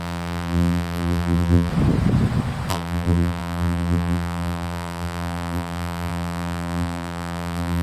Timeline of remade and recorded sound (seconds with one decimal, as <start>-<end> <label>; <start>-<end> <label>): 0.0-1.7 remade; 1.7-2.7 recorded; 2.7-7.8 remade